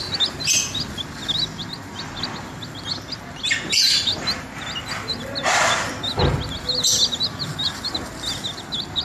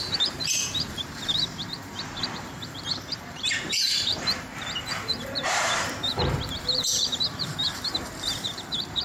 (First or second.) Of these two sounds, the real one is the first